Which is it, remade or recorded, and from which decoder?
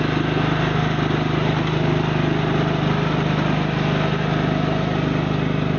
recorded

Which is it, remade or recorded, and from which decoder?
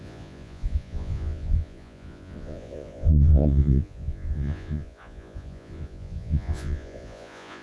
remade, vocoder, Vocos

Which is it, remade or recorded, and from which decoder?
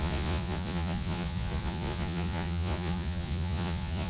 remade, vocoder, Vocos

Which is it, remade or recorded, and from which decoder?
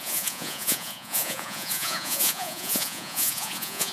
remade, vocoder, Vocos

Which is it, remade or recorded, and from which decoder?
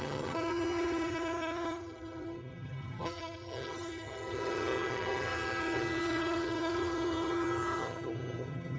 remade, vocoder, HiFi-GAN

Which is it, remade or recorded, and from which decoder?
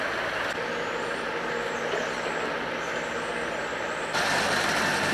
recorded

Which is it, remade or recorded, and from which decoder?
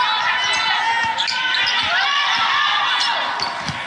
recorded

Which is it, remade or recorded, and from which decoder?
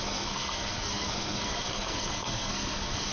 remade, codec, SNAC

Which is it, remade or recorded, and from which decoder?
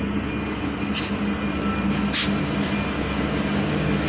recorded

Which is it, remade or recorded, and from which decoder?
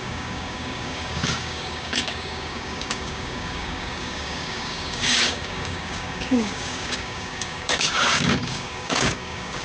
remade, codec, DAC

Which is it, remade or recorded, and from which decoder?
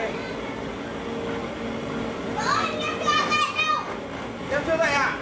recorded